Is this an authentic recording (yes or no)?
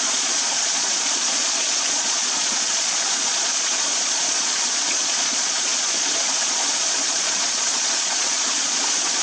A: no